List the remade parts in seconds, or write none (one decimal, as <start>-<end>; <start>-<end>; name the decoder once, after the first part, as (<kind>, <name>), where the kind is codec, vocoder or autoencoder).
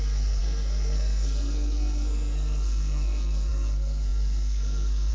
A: 0.0-5.1 (codec, SNAC)